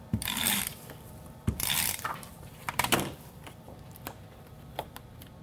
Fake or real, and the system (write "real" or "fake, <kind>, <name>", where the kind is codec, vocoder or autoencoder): fake, vocoder, BigVGAN v2